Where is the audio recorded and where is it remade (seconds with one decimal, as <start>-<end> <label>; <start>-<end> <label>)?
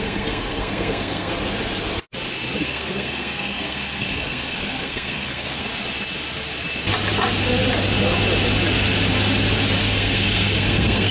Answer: 0.0-1.3 remade; 1.3-2.6 recorded; 2.6-5.7 remade; 5.7-9.8 recorded; 9.8-11.1 remade